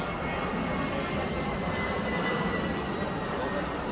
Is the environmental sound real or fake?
real